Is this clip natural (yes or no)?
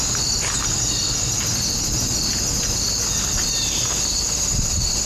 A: yes